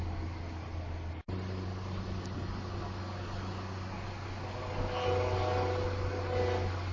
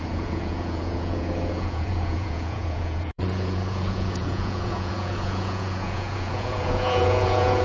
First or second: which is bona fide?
first